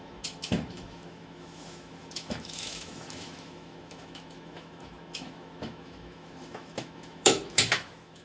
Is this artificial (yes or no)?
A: yes